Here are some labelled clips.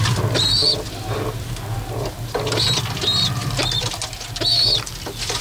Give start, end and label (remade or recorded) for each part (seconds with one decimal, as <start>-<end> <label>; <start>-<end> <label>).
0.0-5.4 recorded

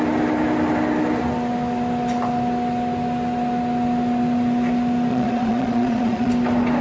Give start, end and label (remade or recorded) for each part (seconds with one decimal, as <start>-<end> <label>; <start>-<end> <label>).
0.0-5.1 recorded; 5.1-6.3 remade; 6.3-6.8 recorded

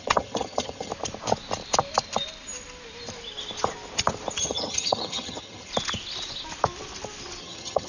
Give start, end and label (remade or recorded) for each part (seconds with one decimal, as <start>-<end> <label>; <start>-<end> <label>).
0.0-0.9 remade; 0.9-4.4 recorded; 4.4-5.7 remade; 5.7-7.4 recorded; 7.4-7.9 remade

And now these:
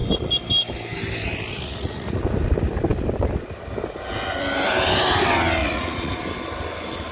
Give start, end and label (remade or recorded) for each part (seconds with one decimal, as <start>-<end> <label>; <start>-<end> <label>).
0.0-1.5 recorded; 1.5-2.2 remade; 2.2-5.6 recorded; 5.6-6.2 remade; 6.2-7.1 recorded

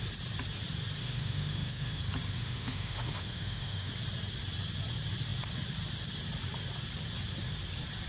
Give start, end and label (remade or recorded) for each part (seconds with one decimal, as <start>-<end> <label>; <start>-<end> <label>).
0.0-1.0 recorded; 1.0-2.0 remade; 2.0-2.4 recorded; 2.4-3.9 remade; 3.9-8.1 recorded

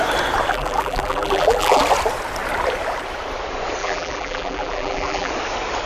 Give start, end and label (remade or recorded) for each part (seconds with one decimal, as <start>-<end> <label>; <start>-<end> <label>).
0.0-0.5 recorded; 0.5-1.8 remade; 1.8-3.8 recorded; 3.8-5.3 remade; 5.3-5.9 recorded